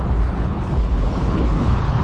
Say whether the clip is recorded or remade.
remade